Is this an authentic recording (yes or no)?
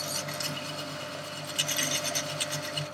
yes